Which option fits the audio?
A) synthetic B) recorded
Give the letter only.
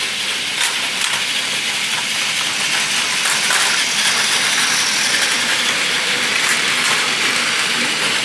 B